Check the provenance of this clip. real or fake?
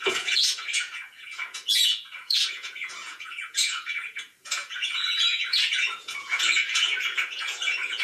fake